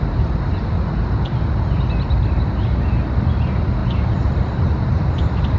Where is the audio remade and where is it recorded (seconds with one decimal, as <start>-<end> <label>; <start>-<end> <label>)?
0.0-5.6 recorded